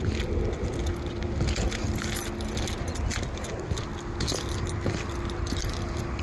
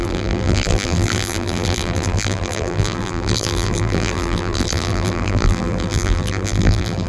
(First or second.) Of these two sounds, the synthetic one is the second